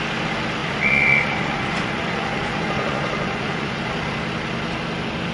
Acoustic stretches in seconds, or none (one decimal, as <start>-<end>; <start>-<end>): 0.0-0.6; 3.8-5.3